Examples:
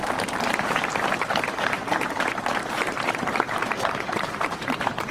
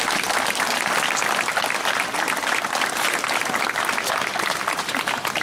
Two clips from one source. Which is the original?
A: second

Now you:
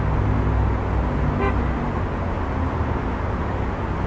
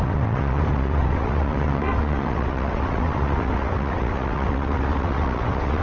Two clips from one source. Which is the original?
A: first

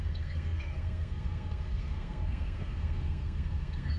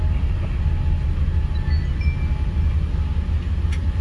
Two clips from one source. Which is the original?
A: second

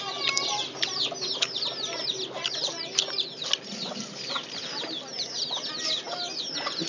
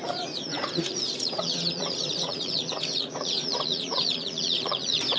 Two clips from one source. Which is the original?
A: first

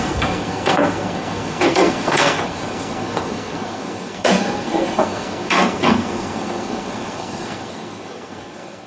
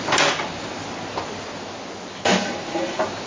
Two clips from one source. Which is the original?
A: second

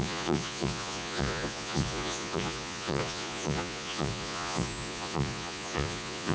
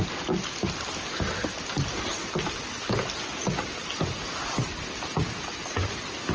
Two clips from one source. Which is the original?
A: second